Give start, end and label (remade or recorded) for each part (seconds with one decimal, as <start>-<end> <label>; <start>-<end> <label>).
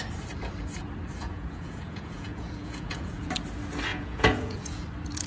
0.0-1.2 recorded; 1.2-3.3 remade; 3.3-3.9 recorded; 3.9-4.8 remade; 4.8-5.3 recorded